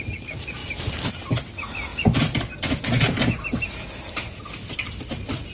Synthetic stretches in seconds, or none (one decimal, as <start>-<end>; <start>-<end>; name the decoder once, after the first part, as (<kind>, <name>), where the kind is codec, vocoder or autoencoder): none